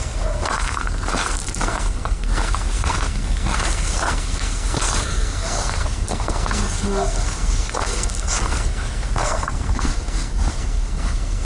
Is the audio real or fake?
fake